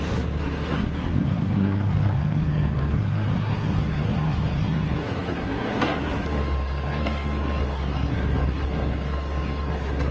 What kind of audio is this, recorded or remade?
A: remade